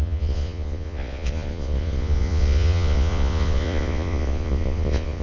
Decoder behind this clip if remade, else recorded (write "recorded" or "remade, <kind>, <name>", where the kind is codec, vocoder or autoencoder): remade, vocoder, Vocos